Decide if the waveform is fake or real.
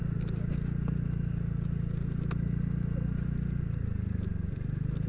real